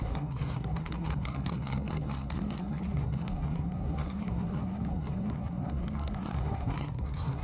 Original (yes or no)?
no